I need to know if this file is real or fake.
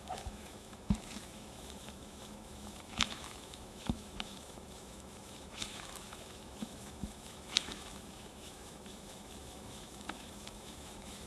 fake